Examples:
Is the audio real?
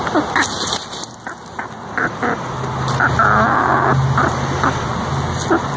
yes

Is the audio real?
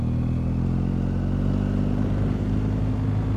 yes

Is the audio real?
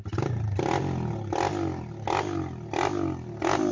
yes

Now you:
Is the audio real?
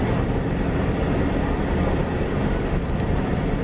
yes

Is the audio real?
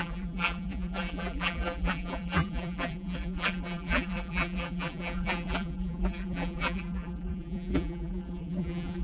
no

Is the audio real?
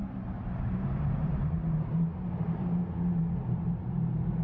no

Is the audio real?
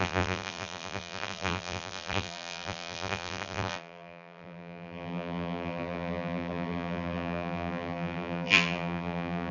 no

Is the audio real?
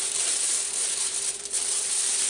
no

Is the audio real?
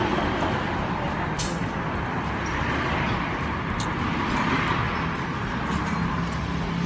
yes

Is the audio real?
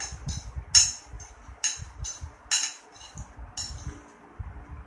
yes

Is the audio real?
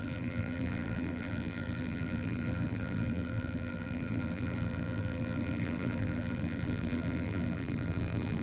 no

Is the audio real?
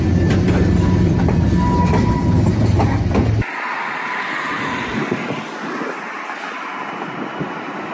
yes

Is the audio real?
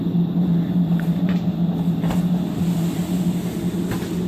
yes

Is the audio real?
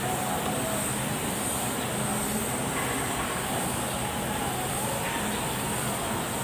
yes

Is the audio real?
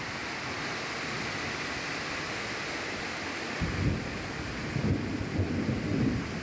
yes